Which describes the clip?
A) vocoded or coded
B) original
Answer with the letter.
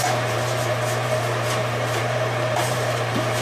A